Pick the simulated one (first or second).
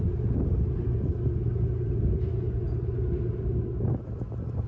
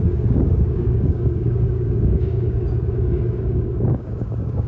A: second